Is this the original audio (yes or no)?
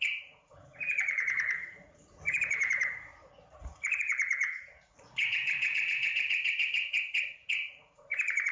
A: no